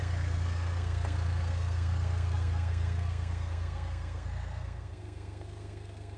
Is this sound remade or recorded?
remade